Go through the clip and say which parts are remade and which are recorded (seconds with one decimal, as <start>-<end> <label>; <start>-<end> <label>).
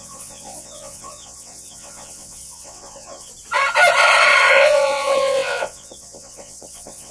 0.0-3.3 remade; 3.3-4.5 recorded; 4.5-7.1 remade